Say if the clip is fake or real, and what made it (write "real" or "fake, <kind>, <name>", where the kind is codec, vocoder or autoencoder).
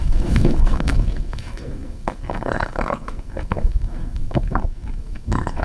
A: fake, codec, SNAC